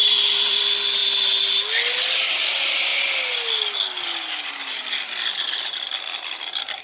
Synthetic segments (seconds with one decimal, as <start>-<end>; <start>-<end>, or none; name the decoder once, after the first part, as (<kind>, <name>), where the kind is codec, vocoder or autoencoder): 0.0-0.6 (vocoder, BigVGAN v2)